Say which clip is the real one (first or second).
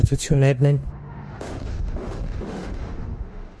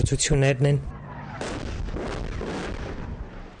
second